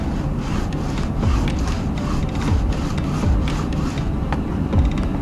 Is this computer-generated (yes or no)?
no